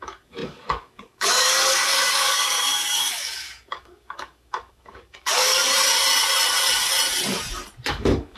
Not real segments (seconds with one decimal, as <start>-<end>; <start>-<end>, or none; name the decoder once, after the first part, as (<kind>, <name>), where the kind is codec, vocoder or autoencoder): 0.0-5.6 (codec, DAC); 7.9-8.4